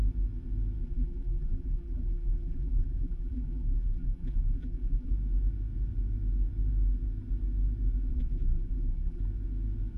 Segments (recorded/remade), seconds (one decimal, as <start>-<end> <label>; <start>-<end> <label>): 0.0-0.8 recorded; 0.8-5.1 remade; 5.1-8.1 recorded; 8.1-9.2 remade; 9.2-10.0 recorded